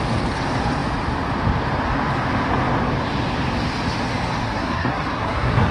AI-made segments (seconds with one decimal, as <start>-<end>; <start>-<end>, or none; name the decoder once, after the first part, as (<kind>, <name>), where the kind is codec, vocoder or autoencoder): 4.4-5.7 (codec, SNAC)